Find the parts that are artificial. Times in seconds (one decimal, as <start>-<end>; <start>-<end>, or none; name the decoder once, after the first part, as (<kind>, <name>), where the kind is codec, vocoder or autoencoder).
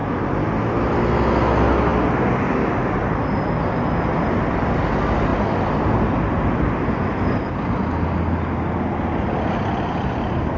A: none